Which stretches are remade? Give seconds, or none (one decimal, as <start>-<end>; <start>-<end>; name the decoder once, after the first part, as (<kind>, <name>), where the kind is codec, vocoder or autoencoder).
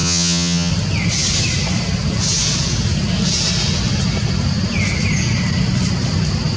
0.0-0.7 (vocoder, HiFi-GAN)